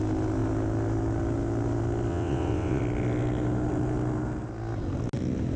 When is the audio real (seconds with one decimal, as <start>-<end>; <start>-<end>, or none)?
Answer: 0.0-2.1; 2.8-5.6